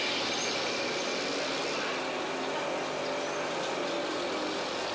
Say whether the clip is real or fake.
real